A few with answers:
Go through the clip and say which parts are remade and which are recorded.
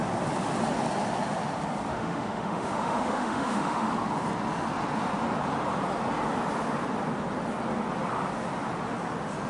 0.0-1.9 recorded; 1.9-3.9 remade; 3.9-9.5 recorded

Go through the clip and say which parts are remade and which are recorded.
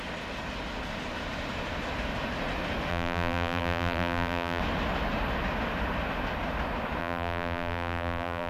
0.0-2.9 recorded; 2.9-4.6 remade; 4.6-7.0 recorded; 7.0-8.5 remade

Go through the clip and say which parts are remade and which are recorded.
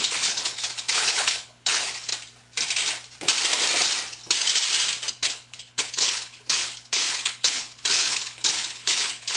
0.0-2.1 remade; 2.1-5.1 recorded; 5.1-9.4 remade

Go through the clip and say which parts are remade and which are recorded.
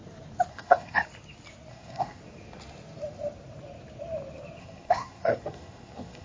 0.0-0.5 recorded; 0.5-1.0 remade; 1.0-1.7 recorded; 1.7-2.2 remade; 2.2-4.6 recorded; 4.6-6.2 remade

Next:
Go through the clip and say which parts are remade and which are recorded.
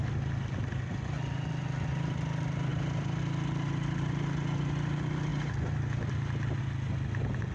0.0-2.7 recorded; 2.7-3.2 remade; 3.2-7.5 recorded